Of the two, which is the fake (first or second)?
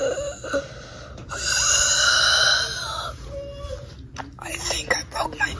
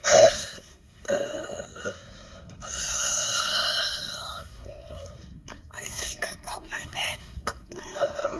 second